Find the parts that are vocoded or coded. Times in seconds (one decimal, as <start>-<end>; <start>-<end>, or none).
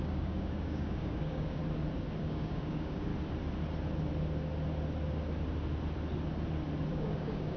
0.0-1.6; 2.2-3.1; 6.9-7.6